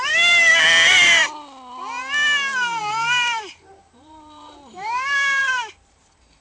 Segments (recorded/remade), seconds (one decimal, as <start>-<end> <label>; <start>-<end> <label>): 0.0-1.2 remade; 1.2-2.8 recorded; 2.8-6.4 remade